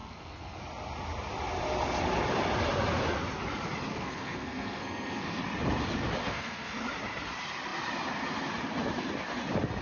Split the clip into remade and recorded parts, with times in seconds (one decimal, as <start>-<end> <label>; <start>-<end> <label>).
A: 0.0-0.6 remade; 0.6-3.9 recorded; 3.9-5.4 remade; 5.4-6.2 recorded; 6.2-6.8 remade; 6.8-9.8 recorded